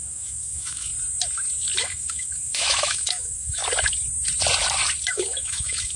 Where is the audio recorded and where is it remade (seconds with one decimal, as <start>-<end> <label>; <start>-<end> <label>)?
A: 0.0-0.9 remade; 0.9-1.8 recorded; 1.8-3.6 remade; 3.6-5.1 recorded; 5.1-6.0 remade